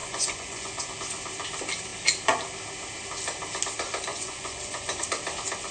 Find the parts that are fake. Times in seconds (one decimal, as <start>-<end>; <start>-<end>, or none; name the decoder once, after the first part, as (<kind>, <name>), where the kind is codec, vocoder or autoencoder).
0.0-0.9 (vocoder, Vocos); 4.1-5.0